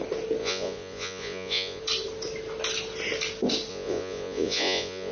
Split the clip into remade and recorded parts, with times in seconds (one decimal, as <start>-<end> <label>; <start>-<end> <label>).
0.0-0.4 recorded; 0.4-1.8 remade; 1.8-3.7 recorded; 3.7-5.1 remade